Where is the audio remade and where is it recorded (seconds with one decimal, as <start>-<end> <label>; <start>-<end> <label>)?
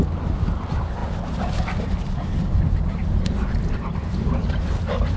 0.0-3.0 recorded; 3.0-4.8 remade; 4.8-5.2 recorded